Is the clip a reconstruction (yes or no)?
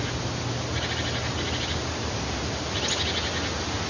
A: no